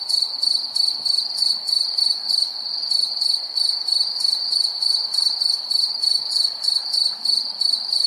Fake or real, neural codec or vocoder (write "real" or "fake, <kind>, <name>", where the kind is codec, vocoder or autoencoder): fake, vocoder, BigVGAN v2